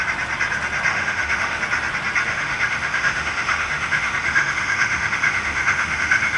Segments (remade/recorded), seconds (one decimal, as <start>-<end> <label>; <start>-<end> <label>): 0.0-0.9 recorded; 0.9-1.6 remade; 1.6-2.3 recorded; 2.3-6.4 remade